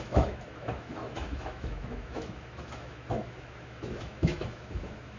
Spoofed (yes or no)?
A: yes